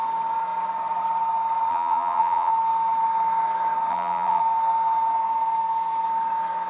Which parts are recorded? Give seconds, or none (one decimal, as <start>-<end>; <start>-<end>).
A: 0.0-1.7; 2.5-3.9; 4.4-6.7